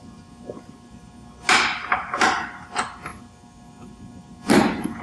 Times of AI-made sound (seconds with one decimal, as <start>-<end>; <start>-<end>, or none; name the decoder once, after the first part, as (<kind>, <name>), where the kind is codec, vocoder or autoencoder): none